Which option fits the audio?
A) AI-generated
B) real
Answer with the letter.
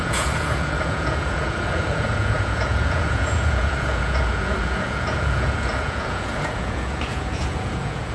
A